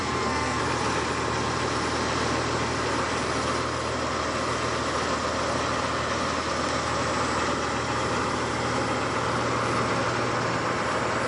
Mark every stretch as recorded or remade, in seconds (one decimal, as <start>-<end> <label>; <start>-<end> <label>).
0.0-0.6 remade; 0.6-11.3 recorded